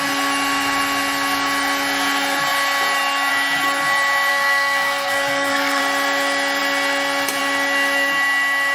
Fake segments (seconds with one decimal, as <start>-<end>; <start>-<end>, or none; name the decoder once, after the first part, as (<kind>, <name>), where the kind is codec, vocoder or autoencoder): 4.3-5.8 (codec, SNAC)